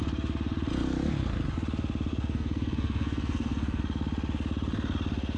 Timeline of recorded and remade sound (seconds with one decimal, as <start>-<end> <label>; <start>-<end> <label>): 0.0-2.1 recorded; 2.1-3.8 remade; 3.8-5.4 recorded